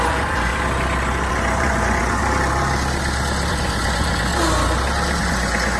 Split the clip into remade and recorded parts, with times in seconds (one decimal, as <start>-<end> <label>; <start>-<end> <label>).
0.0-0.5 remade; 0.5-1.3 recorded; 1.3-2.2 remade; 2.2-3.5 recorded; 3.5-4.3 remade; 4.3-5.2 recorded; 5.2-5.8 remade